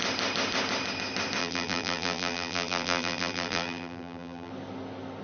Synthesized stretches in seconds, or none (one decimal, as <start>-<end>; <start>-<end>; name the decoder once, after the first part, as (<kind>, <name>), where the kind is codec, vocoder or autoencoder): 1.4-4.5 (vocoder, BigVGAN v2)

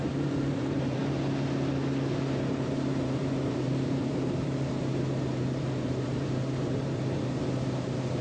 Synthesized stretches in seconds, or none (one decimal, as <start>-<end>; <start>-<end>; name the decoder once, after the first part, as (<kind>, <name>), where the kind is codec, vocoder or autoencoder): 0.0-1.0 (vocoder, BigVGAN v2); 2.1-8.2

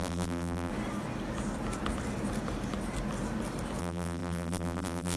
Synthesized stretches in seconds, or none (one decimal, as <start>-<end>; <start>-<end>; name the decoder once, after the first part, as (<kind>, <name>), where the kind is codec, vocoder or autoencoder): 0.0-0.7 (vocoder, BigVGAN v2); 3.8-5.2

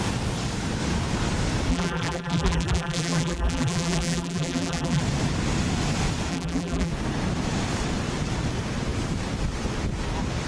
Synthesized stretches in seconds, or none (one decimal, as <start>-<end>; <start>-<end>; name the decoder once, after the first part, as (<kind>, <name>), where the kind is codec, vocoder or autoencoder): 1.7-5.0 (vocoder, BigVGAN v2); 6.3-6.9